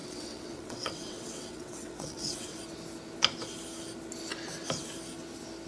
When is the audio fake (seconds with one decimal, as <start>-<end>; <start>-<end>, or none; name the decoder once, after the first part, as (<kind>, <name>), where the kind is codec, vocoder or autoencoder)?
0.0-2.6 (vocoder, WaveNeXt)